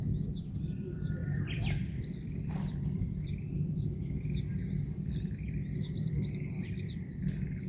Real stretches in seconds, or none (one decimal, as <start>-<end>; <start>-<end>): none